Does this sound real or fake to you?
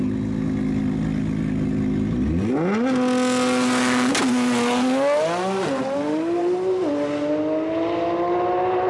real